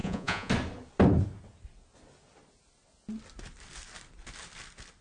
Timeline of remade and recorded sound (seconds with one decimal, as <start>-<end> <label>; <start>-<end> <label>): 0.0-0.5 remade; 0.5-5.0 recorded